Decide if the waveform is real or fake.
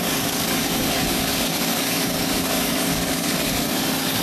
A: fake